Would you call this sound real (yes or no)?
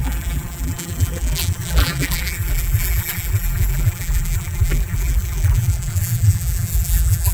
no